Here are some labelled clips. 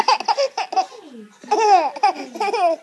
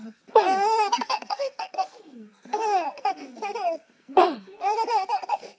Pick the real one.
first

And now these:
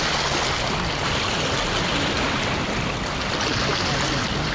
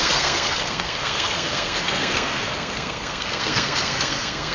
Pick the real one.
first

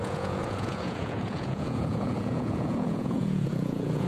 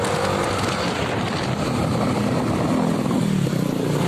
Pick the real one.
second